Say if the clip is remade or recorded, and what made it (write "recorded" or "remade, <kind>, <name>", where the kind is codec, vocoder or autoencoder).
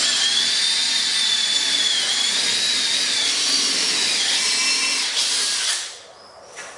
recorded